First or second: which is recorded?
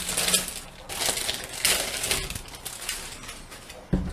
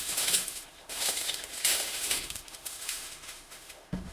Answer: first